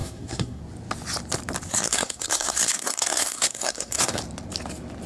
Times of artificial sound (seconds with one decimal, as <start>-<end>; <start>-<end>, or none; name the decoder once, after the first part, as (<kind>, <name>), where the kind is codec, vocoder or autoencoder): 0.0-0.6 (codec, SNAC); 1.7-4.2